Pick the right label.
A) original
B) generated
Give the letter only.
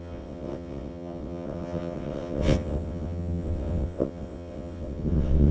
B